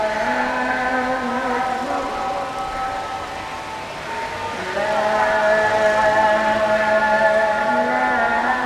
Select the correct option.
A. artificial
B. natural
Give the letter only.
B